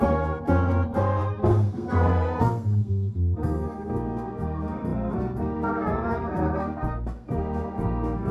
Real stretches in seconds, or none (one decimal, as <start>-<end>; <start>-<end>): none